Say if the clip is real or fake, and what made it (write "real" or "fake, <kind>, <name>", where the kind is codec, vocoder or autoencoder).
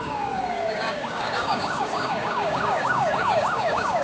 fake, codec, DAC